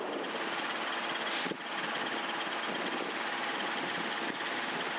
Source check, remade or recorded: recorded